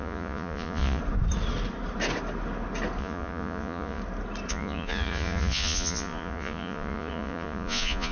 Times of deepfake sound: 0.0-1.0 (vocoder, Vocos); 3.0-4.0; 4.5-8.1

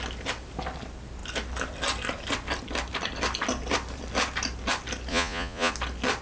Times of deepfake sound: 5.1-5.7 (vocoder, Vocos)

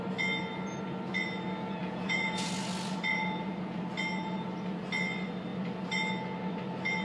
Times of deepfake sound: 1.8-2.5 (vocoder, Vocos); 3.1-3.8

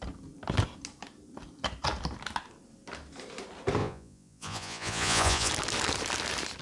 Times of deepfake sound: 3.8-5.5 (vocoder, Vocos)

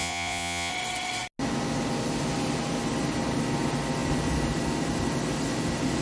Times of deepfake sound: 0.0-0.7 (vocoder, Vocos)

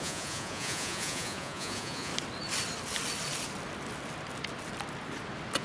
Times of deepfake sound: 0.0-2.1 (vocoder, Vocos)

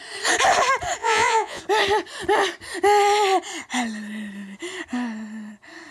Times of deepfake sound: 1.0-1.6 (vocoder, Vocos)